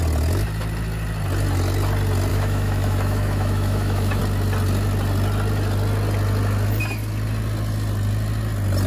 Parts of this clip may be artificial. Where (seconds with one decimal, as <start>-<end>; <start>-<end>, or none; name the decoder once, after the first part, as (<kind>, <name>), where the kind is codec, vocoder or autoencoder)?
2.3-4.2 (autoencoder, DAC-VAE)